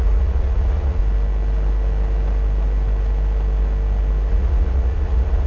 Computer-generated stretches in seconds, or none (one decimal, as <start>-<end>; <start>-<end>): 0.0-1.0; 4.3-5.5